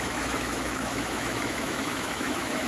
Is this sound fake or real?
fake